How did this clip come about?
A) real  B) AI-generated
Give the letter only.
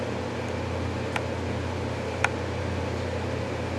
A